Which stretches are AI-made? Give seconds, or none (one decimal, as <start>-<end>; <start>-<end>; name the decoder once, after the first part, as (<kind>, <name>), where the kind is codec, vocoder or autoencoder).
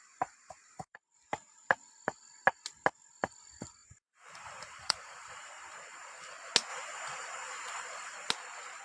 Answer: 1.3-1.9 (vocoder, BigVGAN v2); 3.8-6.3; 6.7-8.3